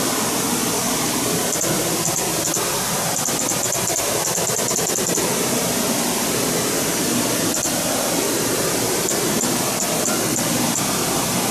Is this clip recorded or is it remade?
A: recorded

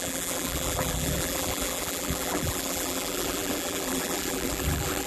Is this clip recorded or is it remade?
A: remade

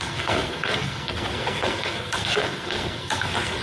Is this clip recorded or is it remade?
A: remade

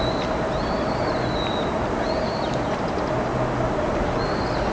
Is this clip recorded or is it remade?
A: recorded